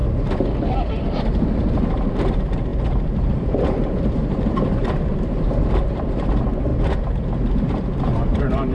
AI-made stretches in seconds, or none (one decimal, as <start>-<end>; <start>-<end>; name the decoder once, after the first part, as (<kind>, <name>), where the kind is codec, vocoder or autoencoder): 1.2-6.7 (vocoder, BigVGAN v2); 7.5-8.7

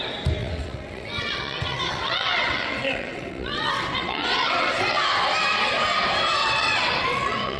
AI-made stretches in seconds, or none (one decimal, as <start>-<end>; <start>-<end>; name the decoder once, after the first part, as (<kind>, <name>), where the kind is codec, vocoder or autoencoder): 0.4-5.0 (vocoder, WaveNeXt); 6.4-7.6

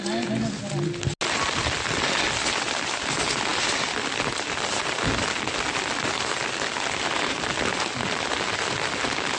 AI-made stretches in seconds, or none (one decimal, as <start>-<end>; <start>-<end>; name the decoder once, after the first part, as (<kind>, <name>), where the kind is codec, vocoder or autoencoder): none

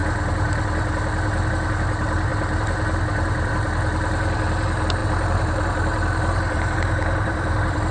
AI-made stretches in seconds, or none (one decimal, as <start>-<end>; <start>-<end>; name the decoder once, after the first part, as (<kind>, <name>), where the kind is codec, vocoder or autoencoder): 5.0-7.9 (vocoder, BigVGAN v2)

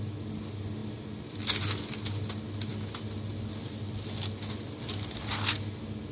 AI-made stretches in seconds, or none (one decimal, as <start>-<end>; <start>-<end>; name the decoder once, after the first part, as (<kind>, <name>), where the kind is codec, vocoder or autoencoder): none

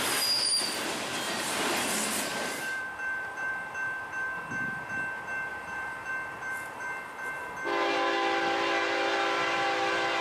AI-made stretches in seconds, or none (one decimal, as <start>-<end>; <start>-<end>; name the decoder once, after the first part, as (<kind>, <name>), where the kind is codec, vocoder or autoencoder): 2.3-3.5 (vocoder, BigVGAN v2); 5.5-6.1